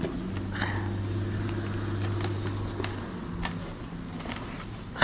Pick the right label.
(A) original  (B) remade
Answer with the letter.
A